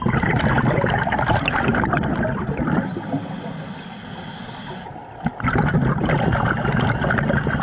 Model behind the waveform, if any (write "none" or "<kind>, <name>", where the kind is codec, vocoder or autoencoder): none